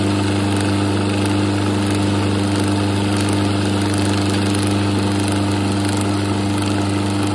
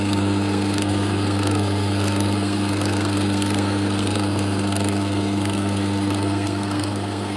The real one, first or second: first